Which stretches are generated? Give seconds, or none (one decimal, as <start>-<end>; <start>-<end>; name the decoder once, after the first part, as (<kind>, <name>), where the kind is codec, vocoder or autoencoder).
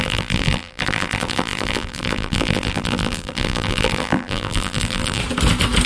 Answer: 0.0-5.2 (vocoder, BigVGAN v2)